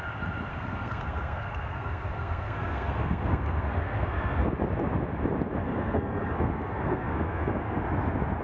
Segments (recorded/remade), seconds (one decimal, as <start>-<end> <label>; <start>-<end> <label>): 0.0-0.5 recorded; 0.5-4.5 remade; 4.5-5.6 recorded; 5.6-7.8 remade; 7.8-8.4 recorded